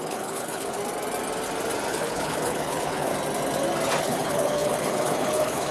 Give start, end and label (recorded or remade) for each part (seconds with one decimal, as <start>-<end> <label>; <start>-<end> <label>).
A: 0.0-0.8 remade; 0.8-1.9 recorded; 1.9-3.1 remade; 3.1-4.0 recorded; 4.0-5.7 remade

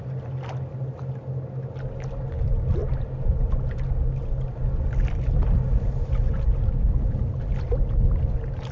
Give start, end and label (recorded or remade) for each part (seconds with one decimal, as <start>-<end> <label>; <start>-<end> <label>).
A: 0.0-8.7 recorded

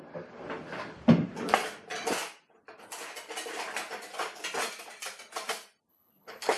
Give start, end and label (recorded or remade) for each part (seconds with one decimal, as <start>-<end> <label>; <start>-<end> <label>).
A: 0.0-5.9 recorded; 5.9-6.6 remade